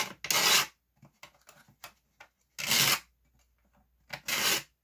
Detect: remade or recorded recorded